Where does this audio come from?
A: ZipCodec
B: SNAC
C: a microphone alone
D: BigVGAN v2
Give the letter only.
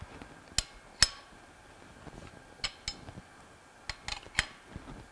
C